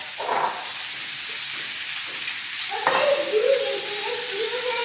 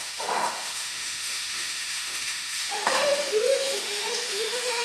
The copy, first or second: second